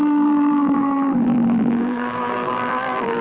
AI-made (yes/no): yes